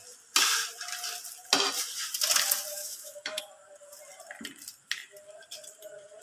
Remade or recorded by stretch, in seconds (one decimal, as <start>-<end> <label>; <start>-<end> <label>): 0.0-2.7 recorded; 2.7-3.4 remade; 3.4-6.2 recorded